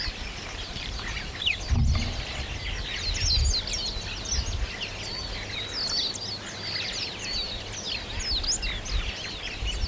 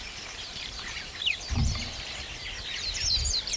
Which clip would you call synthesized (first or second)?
second